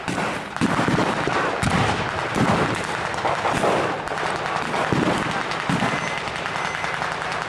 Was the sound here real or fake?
real